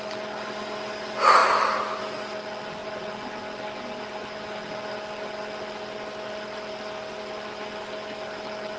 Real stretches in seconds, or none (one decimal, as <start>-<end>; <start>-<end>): 0.0-8.8